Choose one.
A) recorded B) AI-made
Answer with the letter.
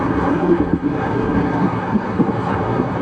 B